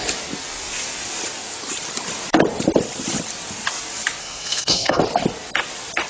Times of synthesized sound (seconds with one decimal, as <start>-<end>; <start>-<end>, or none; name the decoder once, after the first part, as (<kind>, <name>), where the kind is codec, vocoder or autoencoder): 4.2-5.0 (codec, SNAC)